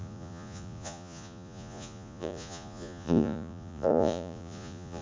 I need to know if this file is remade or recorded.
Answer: remade